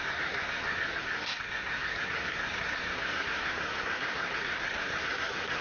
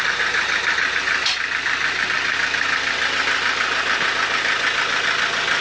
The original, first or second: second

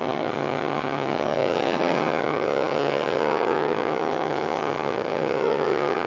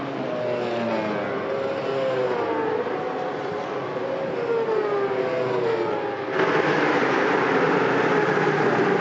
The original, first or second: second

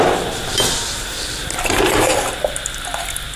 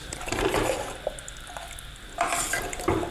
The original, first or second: first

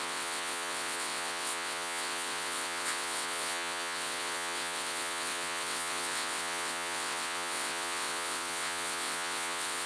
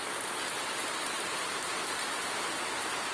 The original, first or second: second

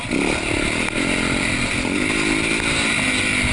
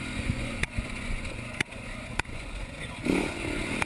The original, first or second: first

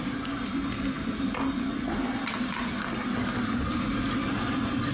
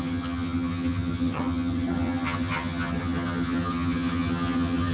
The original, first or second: first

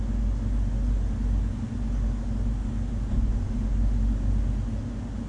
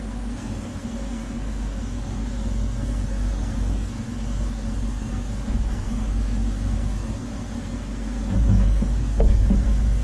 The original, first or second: first